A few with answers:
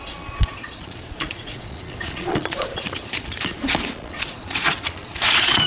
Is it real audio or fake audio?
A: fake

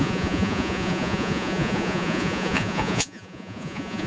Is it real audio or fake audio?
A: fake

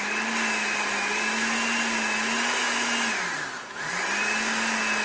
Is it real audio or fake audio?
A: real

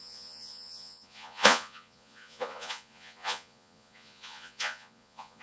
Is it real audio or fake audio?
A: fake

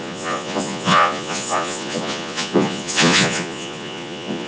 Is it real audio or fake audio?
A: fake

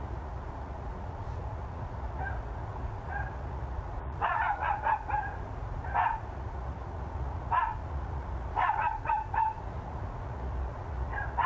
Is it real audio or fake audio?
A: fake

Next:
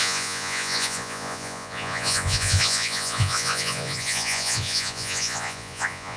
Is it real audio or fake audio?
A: fake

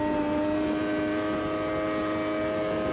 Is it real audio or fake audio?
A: real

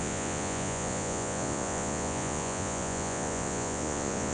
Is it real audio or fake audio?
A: fake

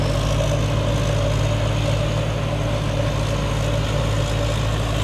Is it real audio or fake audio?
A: real